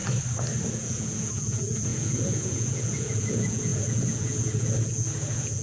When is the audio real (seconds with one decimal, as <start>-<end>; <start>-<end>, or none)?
0.0-0.7

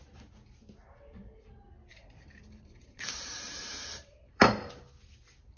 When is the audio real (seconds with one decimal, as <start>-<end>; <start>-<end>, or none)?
0.0-1.9; 4.8-5.6

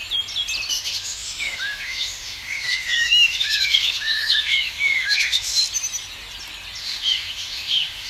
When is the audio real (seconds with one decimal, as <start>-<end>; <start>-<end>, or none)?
0.0-0.7; 5.6-6.8

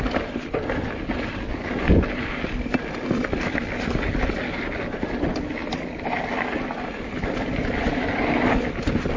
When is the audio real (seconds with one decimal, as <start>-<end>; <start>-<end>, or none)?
0.0-9.2

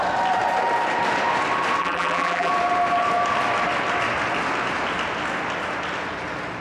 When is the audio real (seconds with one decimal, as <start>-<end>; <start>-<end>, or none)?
0.0-1.8; 2.5-6.6